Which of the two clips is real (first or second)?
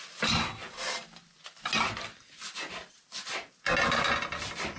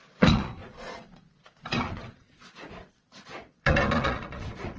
first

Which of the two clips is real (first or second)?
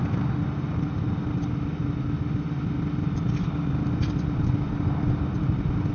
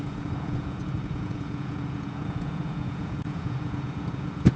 first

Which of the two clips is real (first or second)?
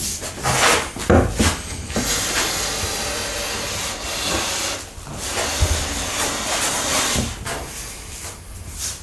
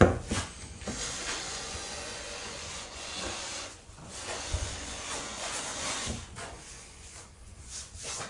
first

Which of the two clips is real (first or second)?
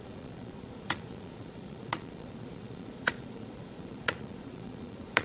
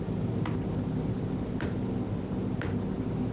second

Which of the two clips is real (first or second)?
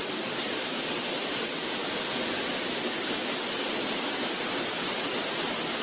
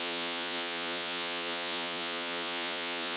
first